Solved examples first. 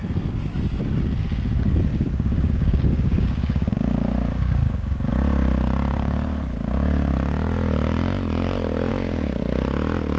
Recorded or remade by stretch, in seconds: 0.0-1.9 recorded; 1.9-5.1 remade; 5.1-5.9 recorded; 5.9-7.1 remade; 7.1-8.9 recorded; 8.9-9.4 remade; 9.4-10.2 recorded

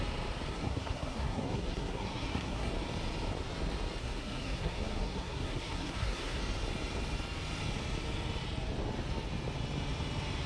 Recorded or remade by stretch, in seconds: 0.0-0.5 recorded; 0.5-2.7 remade; 2.7-4.0 recorded; 4.0-6.4 remade; 6.4-10.5 recorded

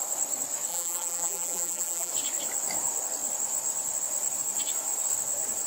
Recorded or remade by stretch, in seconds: 0.0-0.7 recorded; 0.7-2.1 remade; 2.1-5.7 recorded